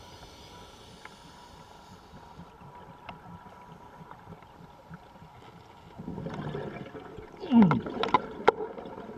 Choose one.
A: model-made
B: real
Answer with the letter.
B